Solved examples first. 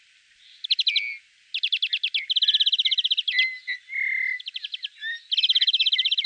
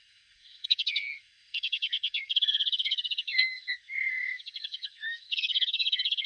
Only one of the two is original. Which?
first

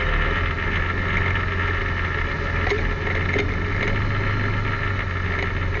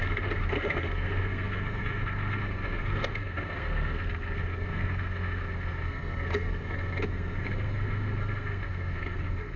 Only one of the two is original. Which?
first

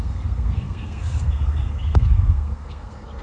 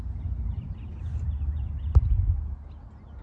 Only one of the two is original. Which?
second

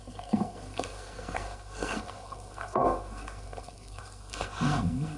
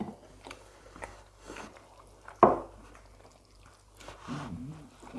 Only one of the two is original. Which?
second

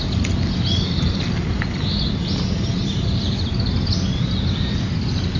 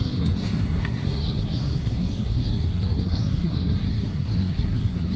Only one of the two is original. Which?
first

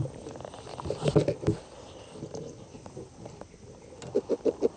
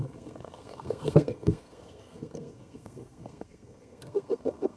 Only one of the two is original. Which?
first